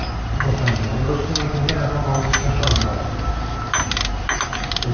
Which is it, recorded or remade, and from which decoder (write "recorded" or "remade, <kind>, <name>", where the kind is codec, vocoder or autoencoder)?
recorded